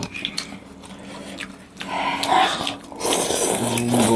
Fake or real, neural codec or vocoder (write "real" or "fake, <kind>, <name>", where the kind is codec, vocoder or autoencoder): real